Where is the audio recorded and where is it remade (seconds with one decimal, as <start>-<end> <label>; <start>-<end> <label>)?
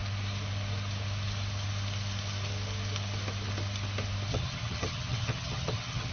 0.0-4.3 recorded; 4.3-6.1 remade